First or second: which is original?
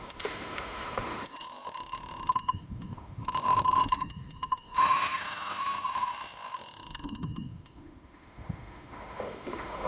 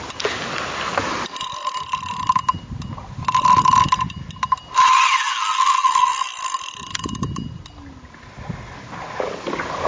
second